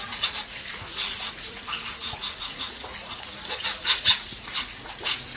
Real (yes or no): no